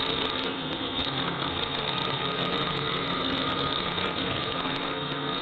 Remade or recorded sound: remade